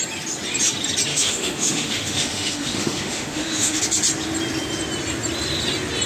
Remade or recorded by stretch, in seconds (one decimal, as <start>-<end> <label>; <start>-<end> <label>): 0.0-1.1 recorded; 1.1-3.8 remade; 3.8-6.1 recorded